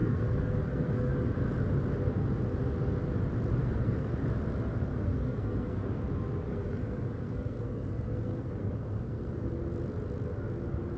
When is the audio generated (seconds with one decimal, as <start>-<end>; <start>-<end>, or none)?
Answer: 0.0-1.1; 3.6-4.1; 4.9-6.0; 6.5-9.5